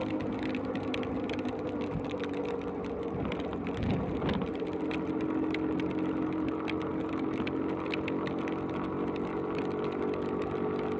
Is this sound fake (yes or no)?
no